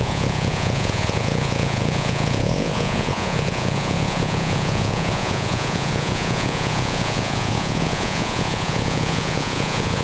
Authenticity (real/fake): fake